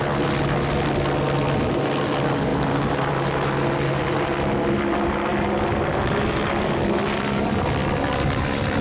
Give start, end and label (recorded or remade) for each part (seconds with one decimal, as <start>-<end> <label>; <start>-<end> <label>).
0.0-8.8 recorded